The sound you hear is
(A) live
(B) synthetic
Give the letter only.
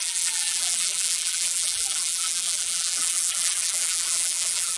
B